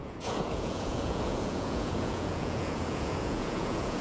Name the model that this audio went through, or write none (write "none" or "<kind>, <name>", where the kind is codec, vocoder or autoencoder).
vocoder, Vocos